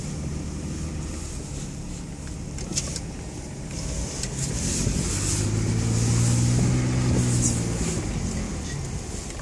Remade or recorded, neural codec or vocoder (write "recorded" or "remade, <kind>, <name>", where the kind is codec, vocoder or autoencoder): recorded